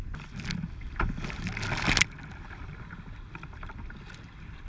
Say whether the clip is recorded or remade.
recorded